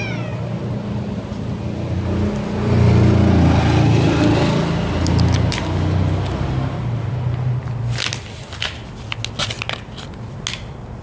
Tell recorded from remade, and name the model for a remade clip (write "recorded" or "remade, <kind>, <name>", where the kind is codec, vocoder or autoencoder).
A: recorded